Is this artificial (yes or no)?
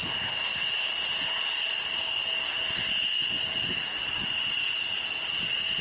no